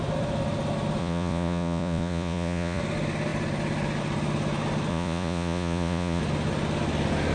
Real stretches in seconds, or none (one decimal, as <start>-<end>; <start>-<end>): 0.0-1.0; 2.8-4.9; 6.2-7.3